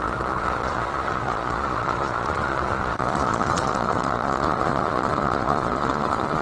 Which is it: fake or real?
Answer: fake